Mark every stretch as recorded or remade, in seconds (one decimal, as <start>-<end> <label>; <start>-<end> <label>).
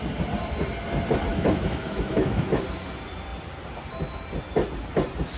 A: 0.0-1.3 recorded; 1.3-2.6 remade; 2.6-5.4 recorded